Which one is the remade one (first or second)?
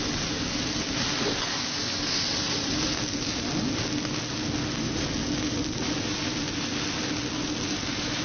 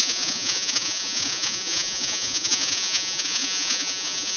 second